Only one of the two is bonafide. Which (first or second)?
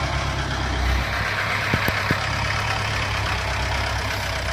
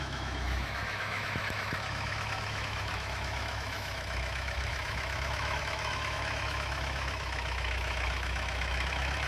first